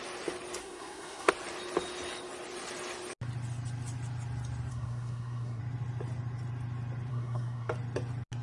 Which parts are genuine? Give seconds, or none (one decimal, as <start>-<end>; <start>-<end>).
0.0-0.6; 1.3-4.7; 5.6-7.1; 7.7-8.4